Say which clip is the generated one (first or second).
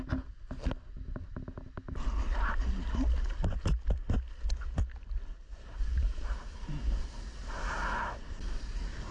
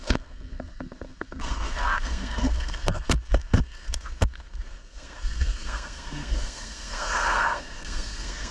second